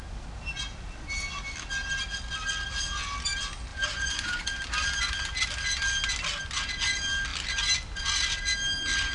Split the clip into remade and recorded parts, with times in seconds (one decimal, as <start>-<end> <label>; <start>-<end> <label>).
0.0-3.7 recorded; 3.7-4.4 remade; 4.4-9.1 recorded